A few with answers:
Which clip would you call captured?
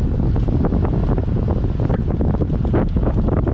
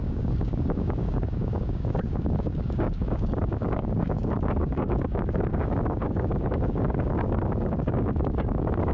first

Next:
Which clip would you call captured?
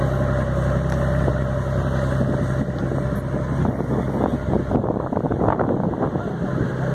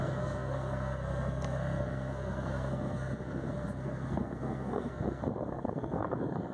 first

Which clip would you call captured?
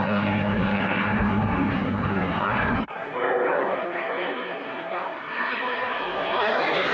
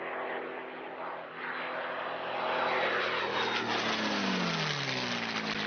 second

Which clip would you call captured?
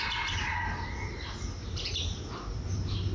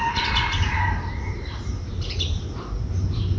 first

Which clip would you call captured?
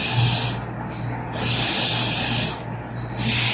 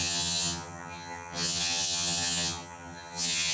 first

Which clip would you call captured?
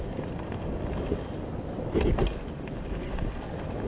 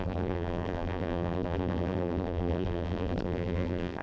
first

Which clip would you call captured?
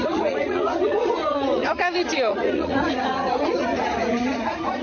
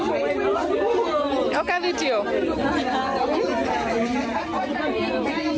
second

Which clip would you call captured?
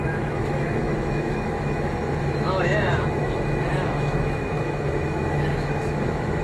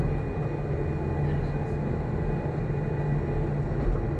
second